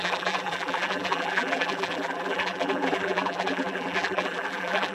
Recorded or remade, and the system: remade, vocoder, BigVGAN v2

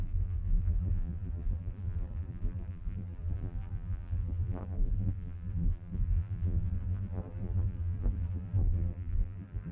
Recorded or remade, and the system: remade, vocoder, BigVGAN v2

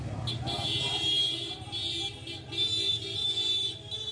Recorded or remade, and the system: recorded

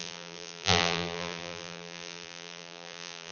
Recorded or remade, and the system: remade, vocoder, BigVGAN v2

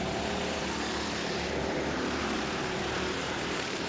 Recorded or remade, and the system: remade, vocoder, BigVGAN v2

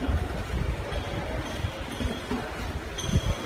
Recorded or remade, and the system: recorded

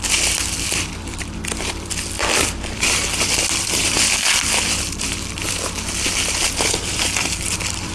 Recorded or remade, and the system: remade, vocoder, BigVGAN v2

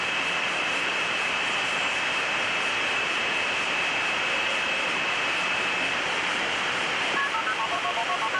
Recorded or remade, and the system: remade, vocoder, BigVGAN v2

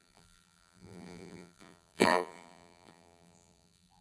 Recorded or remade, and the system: remade, vocoder, BigVGAN v2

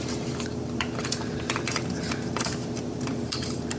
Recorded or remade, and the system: remade, vocoder, BigVGAN v2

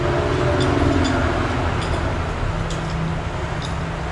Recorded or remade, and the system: recorded